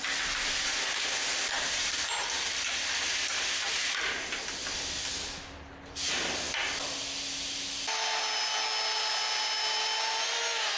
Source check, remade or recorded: recorded